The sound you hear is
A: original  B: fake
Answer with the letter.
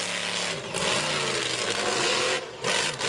A